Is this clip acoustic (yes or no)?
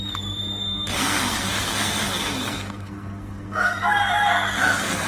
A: no